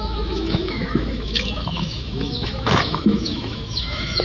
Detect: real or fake fake